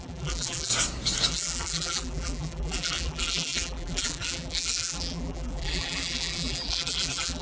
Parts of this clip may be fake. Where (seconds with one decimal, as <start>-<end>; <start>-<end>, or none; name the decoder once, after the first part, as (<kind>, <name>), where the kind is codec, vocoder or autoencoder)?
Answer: 0.0-0.7 (vocoder, BigVGAN v2); 1.3-7.4